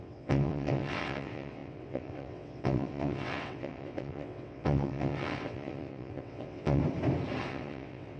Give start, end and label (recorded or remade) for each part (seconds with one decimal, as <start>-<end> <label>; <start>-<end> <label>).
0.0-6.8 remade; 6.8-7.4 recorded; 7.4-8.2 remade